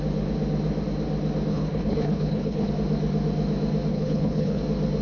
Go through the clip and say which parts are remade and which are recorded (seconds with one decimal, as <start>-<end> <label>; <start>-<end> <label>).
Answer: 0.0-1.5 recorded; 1.5-2.7 remade; 2.7-3.9 recorded; 3.9-4.6 remade; 4.6-5.0 recorded